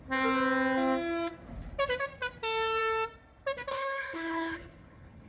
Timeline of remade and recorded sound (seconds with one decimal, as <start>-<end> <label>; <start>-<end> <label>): 0.0-3.7 recorded; 3.7-5.3 remade